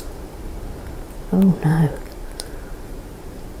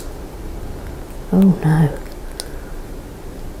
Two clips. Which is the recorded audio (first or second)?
second